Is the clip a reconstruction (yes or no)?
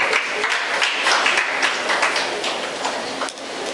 no